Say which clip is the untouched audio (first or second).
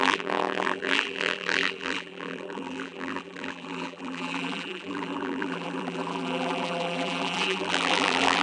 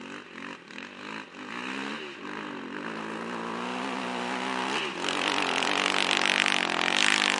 second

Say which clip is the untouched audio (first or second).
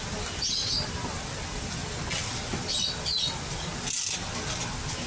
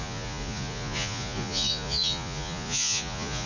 first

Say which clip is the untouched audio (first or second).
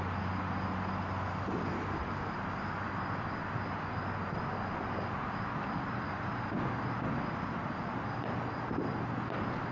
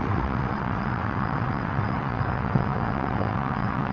first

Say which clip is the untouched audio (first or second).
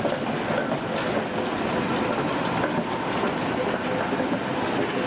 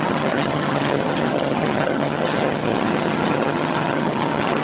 first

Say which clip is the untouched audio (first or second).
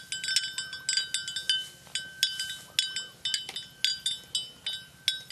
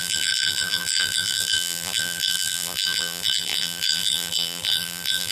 first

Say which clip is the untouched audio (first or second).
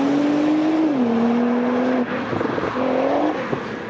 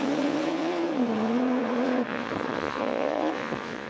first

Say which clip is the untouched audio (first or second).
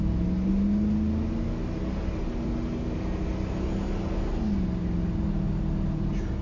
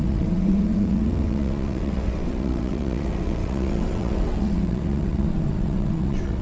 first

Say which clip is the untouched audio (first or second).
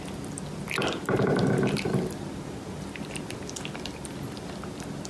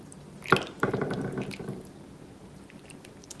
second